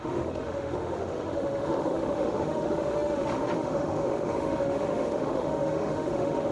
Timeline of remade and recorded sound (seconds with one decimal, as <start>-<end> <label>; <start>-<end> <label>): 0.0-6.5 remade